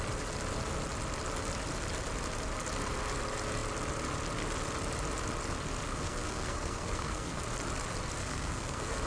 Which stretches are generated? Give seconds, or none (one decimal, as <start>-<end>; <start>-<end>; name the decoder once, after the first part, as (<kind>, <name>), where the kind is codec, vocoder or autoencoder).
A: 5.9-7.4 (codec, SNAC); 8.2-9.1